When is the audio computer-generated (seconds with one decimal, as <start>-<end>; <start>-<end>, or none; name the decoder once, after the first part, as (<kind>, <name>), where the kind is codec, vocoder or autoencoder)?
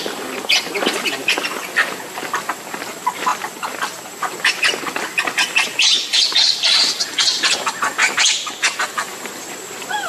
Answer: 3.3-4.8 (vocoder, BigVGAN v2); 8.0-10.1